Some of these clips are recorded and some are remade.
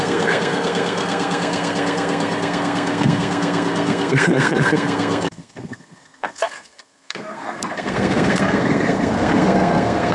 remade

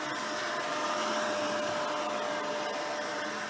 recorded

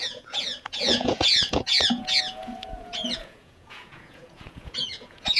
remade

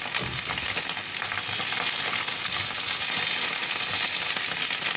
recorded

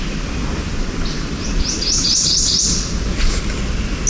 recorded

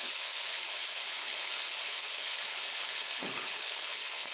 remade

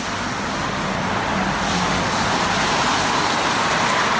recorded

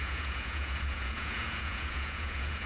remade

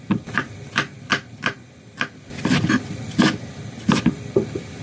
recorded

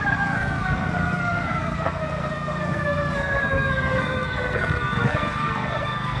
remade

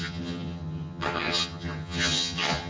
remade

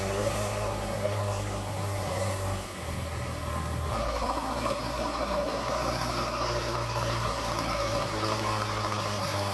remade